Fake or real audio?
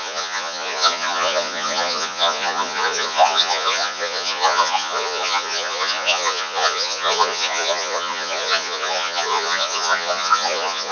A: fake